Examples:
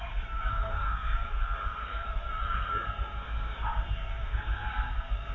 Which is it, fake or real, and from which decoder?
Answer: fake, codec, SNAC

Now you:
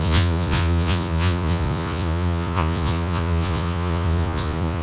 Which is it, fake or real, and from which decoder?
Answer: fake, vocoder, Vocos